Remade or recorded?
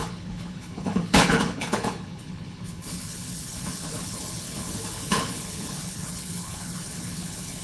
remade